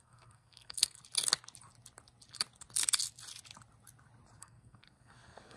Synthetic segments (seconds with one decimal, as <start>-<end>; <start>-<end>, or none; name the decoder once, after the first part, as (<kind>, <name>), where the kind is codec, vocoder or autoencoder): 0.0-1.0 (codec, SNAC); 4.4-5.6